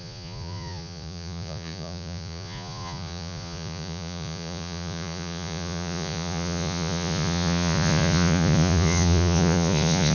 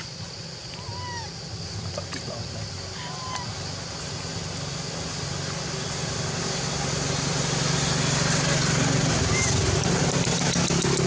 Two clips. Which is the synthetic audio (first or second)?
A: first